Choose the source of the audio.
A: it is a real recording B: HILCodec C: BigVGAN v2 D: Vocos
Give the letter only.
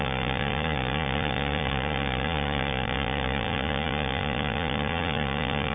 D